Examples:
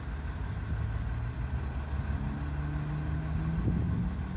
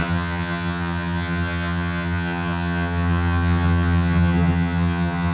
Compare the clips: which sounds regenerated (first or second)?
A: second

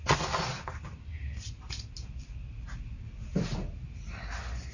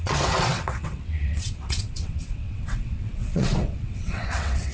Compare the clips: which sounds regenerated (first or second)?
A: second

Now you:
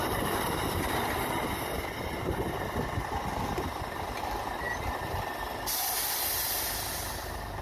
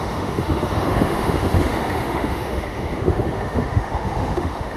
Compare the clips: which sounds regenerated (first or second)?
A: second